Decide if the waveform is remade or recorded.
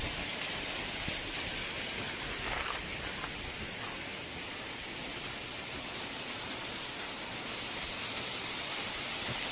recorded